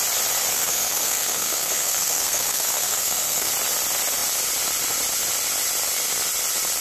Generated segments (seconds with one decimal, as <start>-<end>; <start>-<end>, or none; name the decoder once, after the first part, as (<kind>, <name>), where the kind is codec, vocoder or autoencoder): 0.5-3.5 (codec, SNAC)

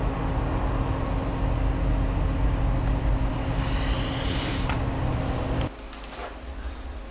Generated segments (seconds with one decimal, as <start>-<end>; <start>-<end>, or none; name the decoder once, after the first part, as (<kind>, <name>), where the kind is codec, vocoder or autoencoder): 6.2-7.1 (vocoder, BigVGAN v2)

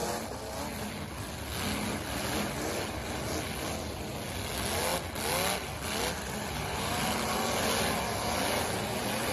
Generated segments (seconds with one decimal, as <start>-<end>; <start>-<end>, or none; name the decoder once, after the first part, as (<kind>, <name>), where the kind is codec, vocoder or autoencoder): none

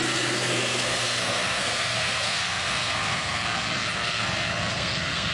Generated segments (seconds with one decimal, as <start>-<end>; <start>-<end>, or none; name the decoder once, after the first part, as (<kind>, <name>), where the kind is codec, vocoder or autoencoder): 0.0-5.3 (codec, SNAC)

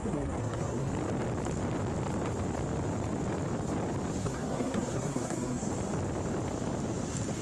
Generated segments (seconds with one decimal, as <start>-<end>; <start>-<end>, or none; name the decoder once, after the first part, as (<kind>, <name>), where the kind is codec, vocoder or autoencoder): 0.0-0.9 (codec, SNAC); 4.2-5.7

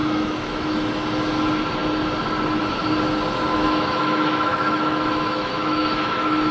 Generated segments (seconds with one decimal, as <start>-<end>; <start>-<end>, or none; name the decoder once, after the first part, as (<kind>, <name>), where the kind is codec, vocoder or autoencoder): 0.0-0.9 (autoencoder, DAC-VAE); 3.5-6.5

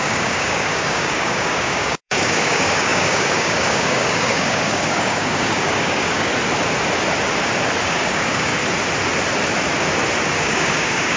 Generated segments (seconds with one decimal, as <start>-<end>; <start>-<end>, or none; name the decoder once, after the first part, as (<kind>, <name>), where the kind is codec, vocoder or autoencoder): 0.0-6.3 (codec, DAC); 7.8-8.5; 10.4-11.2